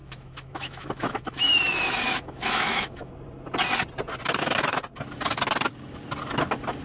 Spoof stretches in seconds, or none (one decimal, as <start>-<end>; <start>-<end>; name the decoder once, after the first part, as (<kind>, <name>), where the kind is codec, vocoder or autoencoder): 0.0-3.1 (autoencoder, DAC-VAE)